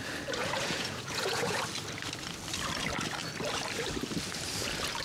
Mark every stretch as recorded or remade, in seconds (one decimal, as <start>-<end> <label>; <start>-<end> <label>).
0.0-0.4 recorded; 0.4-1.6 remade; 1.6-5.0 recorded